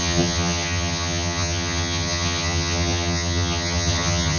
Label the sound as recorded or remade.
remade